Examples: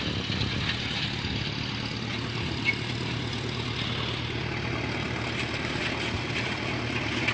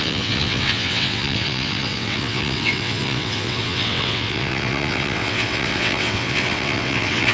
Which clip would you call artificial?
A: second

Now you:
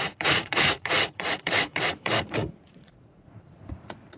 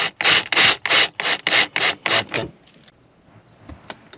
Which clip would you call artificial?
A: first